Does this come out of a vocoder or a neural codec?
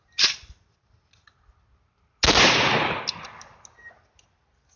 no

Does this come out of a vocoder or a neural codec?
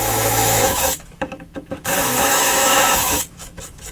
yes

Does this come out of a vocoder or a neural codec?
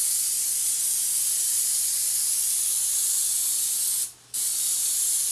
no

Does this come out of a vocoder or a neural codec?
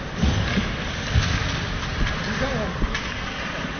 no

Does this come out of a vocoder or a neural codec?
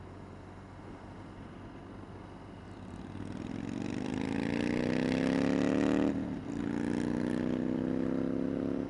no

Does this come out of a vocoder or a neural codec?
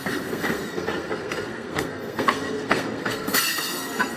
yes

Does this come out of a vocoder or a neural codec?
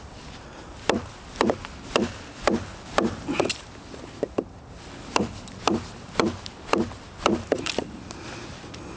no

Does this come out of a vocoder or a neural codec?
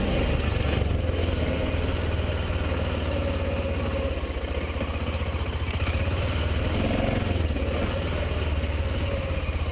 no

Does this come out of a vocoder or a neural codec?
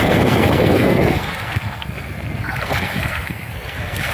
yes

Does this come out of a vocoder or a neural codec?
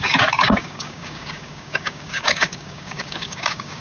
yes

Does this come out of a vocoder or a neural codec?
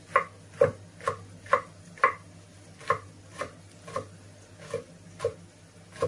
no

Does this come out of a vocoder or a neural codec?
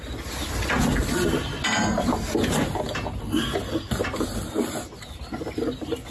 no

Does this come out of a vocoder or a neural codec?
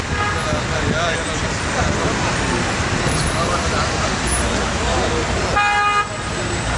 no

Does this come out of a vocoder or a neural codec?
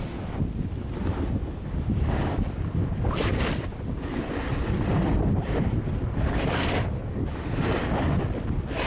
no